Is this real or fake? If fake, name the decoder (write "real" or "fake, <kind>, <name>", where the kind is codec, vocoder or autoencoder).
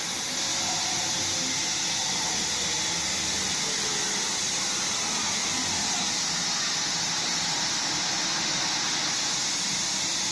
real